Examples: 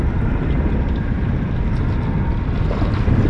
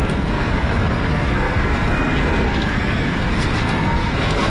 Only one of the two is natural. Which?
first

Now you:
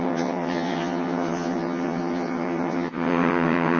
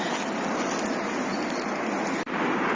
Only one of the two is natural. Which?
second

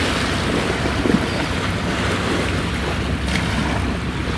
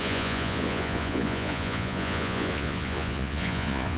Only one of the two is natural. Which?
first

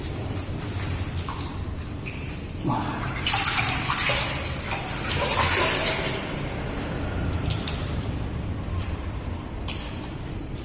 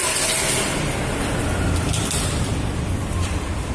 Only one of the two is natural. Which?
second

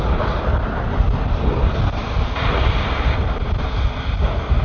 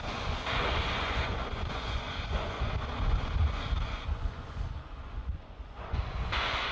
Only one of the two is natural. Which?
first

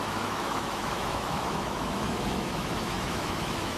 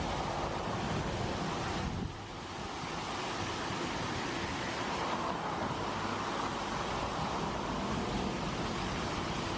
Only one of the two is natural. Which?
second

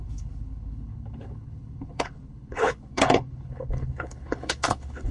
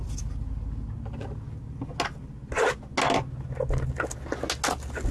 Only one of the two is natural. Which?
second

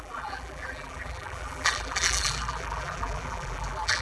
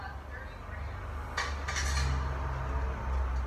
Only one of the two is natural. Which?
second